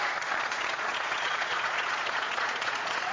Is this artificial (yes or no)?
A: yes